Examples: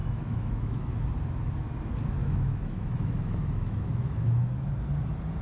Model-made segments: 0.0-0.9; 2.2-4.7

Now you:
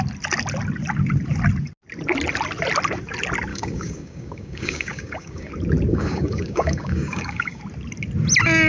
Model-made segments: 3.5-5.5; 5.9-7.6

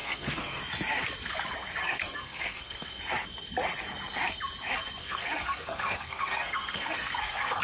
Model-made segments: 0.0-0.6; 1.8-3.0; 5.0-7.6